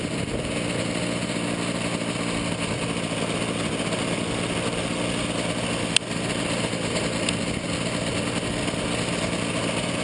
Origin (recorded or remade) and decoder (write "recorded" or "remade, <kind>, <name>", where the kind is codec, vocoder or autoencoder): recorded